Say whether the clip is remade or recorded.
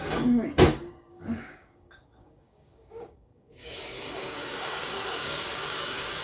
remade